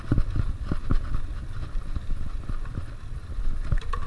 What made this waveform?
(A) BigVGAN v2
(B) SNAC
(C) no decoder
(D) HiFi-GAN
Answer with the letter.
C